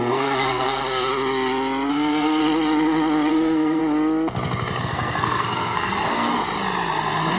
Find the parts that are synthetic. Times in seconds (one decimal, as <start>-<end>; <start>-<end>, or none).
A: 0.0-0.8; 1.9-2.4; 3.3-3.8; 4.8-6.4